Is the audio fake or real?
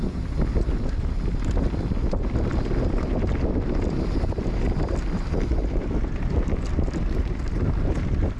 real